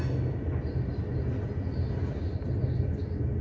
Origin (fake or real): real